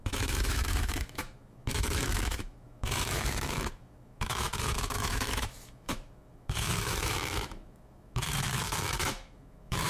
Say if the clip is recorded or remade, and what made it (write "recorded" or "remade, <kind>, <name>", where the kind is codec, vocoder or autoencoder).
remade, autoencoder, DAC-VAE